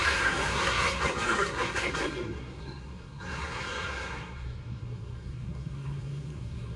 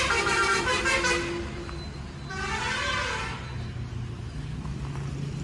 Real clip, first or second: second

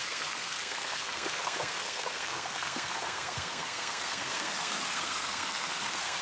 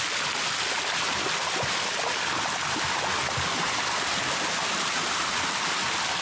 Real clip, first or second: second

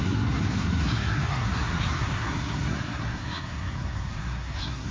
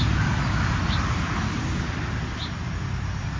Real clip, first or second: second